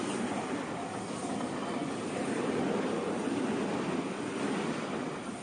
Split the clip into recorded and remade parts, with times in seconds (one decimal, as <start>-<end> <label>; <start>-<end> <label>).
0.0-5.4 recorded